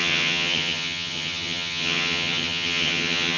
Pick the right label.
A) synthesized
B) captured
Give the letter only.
A